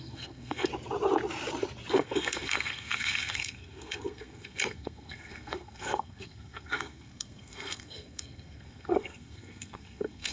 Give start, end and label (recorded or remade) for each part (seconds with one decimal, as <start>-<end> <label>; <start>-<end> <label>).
0.0-0.7 remade; 0.7-1.9 recorded; 1.9-10.3 remade

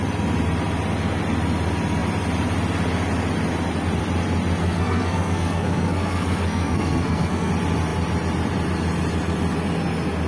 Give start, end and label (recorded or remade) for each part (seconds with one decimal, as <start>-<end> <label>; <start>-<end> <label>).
0.0-4.6 recorded; 4.6-7.5 remade; 7.5-10.3 recorded

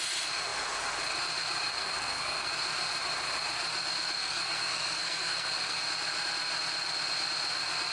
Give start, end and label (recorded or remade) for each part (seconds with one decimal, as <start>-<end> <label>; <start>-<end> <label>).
0.0-1.8 recorded; 1.8-2.5 remade; 2.5-4.2 recorded; 4.2-5.8 remade; 5.8-7.9 recorded

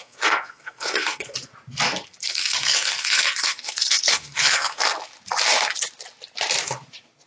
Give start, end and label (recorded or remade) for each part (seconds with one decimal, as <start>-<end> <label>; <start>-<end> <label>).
0.0-1.5 remade; 1.5-2.2 recorded; 2.2-4.8 remade; 4.8-7.3 recorded

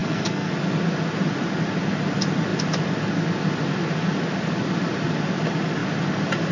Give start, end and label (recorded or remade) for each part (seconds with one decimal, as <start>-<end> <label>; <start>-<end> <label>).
0.0-0.5 remade; 0.5-6.5 recorded

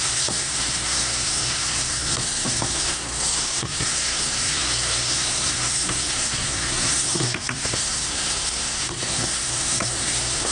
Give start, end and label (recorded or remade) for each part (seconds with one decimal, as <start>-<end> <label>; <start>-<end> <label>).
0.0-10.5 remade

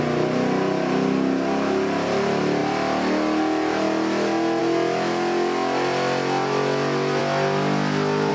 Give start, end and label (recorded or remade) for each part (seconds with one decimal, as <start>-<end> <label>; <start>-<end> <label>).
0.0-8.3 recorded

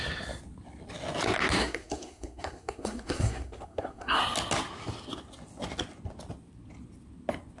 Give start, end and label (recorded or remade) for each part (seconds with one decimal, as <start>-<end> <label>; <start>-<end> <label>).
0.0-1.6 recorded; 1.6-4.2 remade; 4.2-7.6 recorded